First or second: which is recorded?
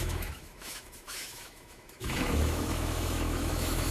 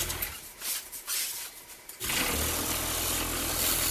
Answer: second